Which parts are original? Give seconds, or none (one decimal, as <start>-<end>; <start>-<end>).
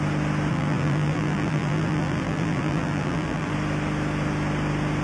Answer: 0.0-0.5; 3.5-5.0